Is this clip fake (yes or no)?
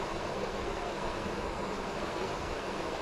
yes